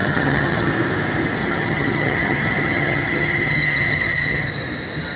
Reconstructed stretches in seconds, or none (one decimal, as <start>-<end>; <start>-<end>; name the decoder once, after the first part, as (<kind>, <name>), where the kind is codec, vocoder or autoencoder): 0.0-0.7 (vocoder, HiFi-GAN); 1.4-4.5